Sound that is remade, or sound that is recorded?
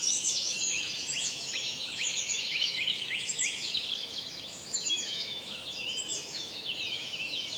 remade